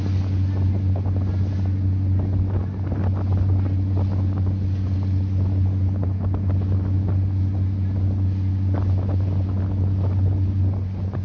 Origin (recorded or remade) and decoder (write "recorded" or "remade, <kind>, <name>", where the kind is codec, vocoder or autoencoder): recorded